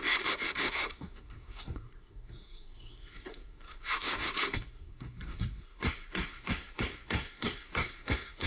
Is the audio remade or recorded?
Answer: remade